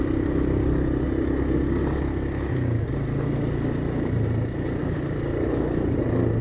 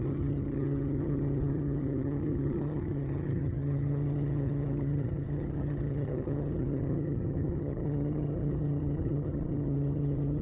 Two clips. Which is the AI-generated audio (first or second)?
second